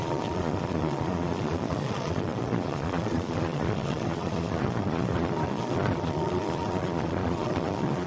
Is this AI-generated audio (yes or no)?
yes